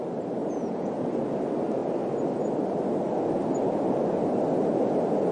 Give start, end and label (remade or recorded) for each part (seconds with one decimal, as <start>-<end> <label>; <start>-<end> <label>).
0.0-0.4 recorded; 0.4-1.0 remade; 1.0-5.3 recorded